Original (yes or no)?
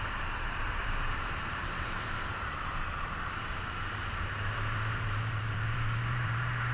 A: no